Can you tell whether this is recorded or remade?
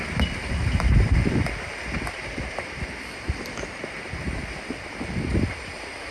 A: recorded